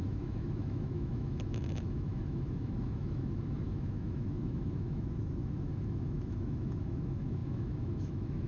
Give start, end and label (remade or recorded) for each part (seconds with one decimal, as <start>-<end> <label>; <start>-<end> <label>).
0.0-8.5 remade